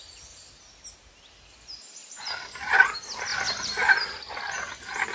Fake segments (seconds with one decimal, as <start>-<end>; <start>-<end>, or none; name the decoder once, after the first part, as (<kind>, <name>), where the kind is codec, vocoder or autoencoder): none